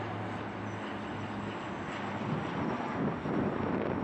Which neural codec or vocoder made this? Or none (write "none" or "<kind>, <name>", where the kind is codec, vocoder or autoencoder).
none